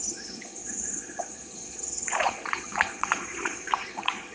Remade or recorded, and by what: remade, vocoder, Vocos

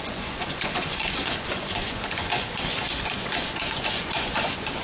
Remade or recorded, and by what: remade, vocoder, Vocos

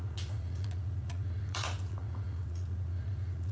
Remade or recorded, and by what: remade, vocoder, Vocos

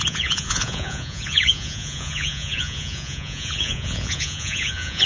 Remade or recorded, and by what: remade, vocoder, Vocos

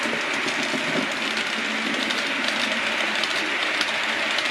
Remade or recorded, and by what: recorded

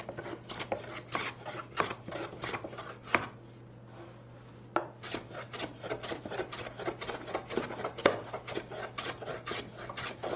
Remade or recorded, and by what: recorded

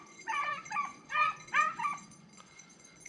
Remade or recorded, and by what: remade, vocoder, Vocos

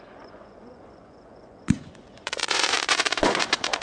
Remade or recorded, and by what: remade, vocoder, Vocos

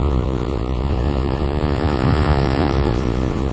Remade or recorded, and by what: remade, vocoder, Vocos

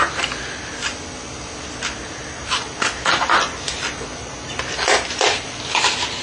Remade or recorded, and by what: recorded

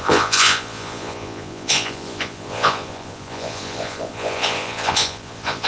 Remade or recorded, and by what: remade, vocoder, Vocos